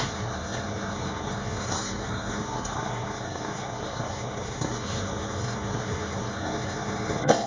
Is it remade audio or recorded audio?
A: remade